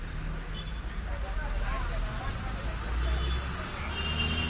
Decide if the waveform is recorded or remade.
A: recorded